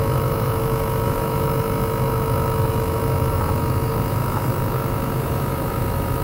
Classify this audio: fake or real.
fake